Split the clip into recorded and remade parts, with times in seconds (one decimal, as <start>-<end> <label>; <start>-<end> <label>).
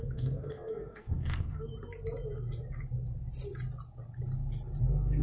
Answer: 0.0-1.7 remade; 1.7-4.8 recorded; 4.8-5.2 remade